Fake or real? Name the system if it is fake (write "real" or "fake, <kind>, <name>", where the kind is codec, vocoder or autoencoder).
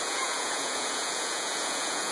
fake, vocoder, Vocos